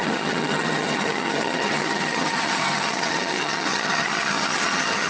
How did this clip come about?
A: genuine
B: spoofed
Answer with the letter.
B